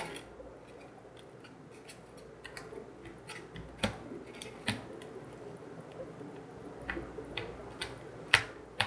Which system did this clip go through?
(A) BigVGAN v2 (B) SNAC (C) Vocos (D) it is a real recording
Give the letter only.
D